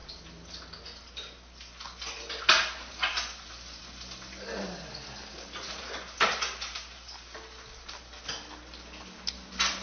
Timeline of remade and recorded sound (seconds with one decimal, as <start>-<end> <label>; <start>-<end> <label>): 0.0-9.8 recorded